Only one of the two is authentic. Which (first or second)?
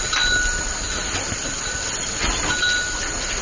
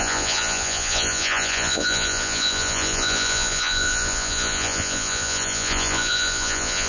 first